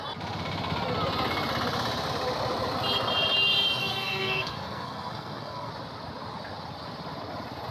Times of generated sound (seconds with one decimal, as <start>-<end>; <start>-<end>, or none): 3.8-5.7